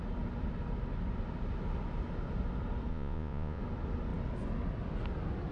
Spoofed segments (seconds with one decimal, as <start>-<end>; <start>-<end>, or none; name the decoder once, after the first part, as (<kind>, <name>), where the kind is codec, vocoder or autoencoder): 2.9-3.6 (vocoder, Vocos)